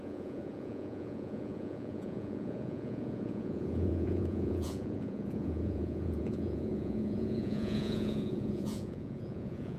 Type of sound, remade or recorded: remade